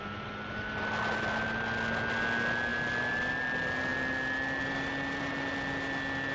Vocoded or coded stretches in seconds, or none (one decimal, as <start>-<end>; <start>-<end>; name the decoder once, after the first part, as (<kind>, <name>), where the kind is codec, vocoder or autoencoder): none